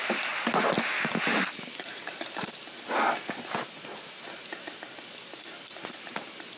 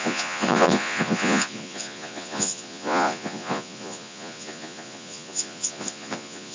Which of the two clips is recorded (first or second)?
first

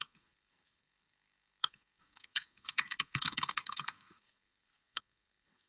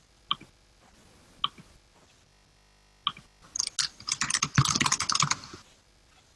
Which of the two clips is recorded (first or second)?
second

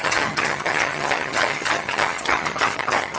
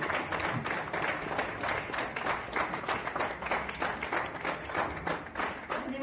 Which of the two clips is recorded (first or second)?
second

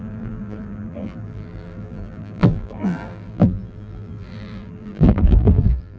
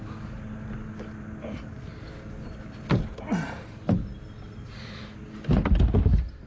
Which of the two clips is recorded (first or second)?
second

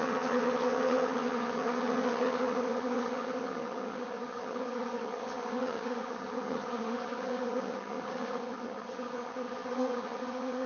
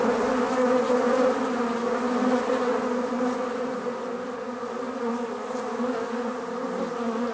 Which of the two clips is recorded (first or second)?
second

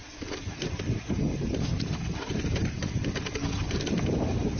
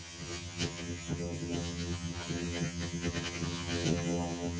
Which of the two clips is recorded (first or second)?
first